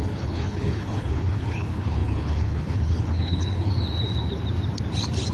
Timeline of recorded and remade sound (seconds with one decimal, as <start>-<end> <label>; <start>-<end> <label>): 0.0-3.7 remade; 3.7-5.3 recorded